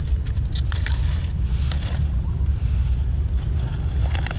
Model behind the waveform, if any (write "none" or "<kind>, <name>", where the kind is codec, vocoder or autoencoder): none